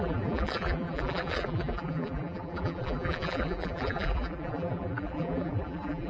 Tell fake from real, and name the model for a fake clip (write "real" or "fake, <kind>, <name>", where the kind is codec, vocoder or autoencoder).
fake, vocoder, BigVGAN v2